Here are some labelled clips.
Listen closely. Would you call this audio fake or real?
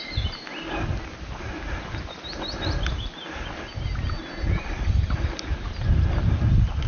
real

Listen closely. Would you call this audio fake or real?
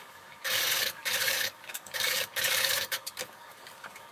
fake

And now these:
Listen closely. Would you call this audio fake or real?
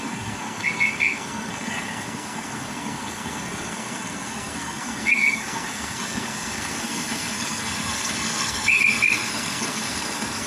fake